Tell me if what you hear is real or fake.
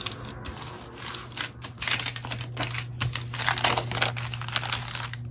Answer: real